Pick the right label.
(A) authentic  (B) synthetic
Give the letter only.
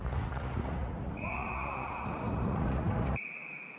B